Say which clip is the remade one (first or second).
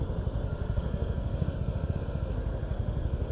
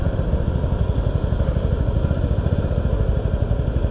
first